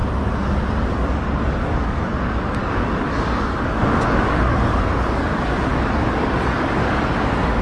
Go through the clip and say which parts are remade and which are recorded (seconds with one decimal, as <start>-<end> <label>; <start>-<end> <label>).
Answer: 0.0-0.9 recorded; 0.9-7.6 remade